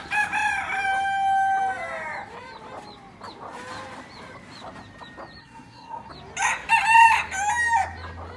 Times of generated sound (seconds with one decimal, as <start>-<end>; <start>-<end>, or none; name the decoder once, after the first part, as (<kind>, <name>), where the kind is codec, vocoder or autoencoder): 5.4-6.1 (codec, SNAC)